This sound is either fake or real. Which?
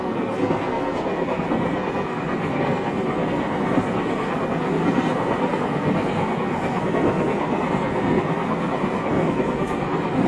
fake